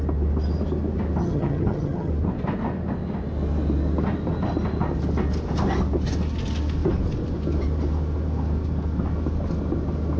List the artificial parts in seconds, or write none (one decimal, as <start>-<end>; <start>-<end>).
1.2-2.1